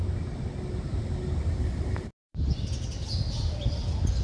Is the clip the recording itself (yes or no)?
yes